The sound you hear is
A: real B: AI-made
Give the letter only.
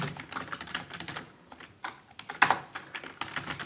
A